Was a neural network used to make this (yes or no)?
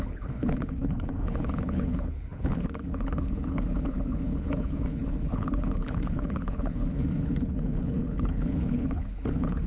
yes